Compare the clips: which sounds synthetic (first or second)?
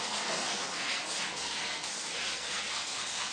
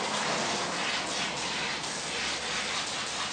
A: first